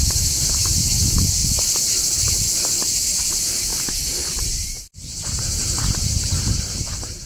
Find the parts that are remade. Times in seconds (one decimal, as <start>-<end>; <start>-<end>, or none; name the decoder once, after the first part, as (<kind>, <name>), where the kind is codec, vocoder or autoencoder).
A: 0.0-1.4 (vocoder, BigVGAN v2); 3.2-3.7; 4.2-7.3